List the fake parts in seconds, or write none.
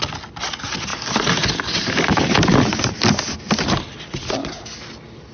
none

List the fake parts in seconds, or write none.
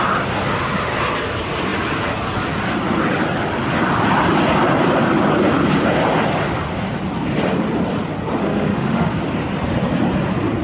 8.4-9.1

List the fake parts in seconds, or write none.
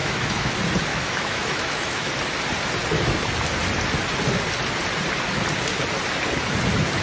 0.0-0.5; 0.9-2.1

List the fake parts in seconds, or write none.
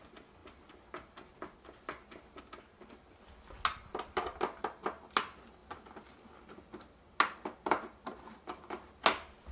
none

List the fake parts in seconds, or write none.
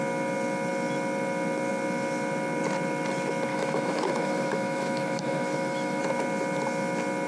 3.5-6.0